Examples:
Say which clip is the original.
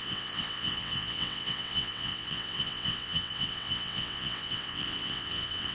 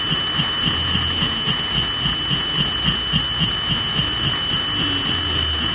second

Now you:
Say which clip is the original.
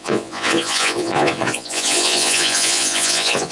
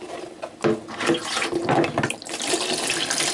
second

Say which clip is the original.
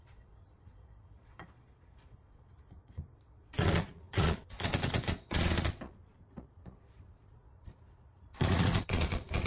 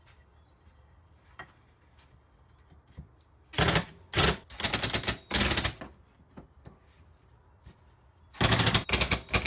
second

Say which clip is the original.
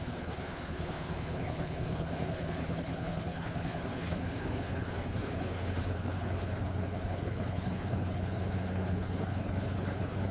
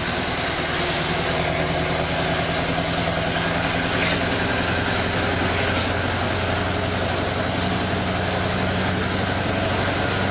second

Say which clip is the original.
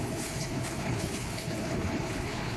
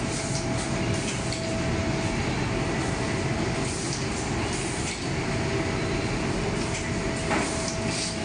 second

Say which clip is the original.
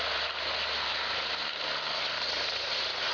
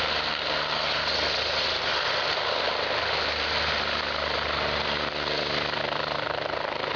second